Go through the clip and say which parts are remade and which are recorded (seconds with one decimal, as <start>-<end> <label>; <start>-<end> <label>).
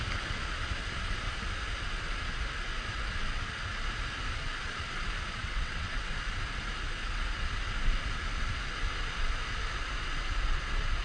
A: 0.0-5.4 recorded; 5.4-6.1 remade; 6.1-11.0 recorded